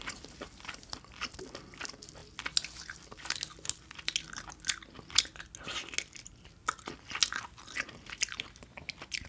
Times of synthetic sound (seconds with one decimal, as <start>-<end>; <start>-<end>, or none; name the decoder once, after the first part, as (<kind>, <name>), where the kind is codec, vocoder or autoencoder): none